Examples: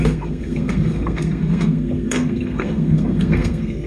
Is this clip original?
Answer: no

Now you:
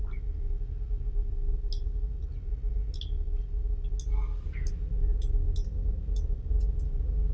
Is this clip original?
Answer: yes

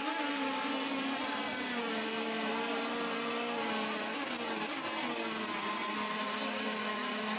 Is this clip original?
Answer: yes